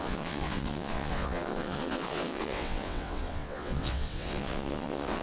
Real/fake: fake